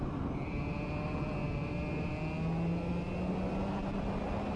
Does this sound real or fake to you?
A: real